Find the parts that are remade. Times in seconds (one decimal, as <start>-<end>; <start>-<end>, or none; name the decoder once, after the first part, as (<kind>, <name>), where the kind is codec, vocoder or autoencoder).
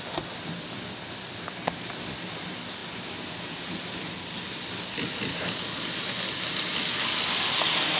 none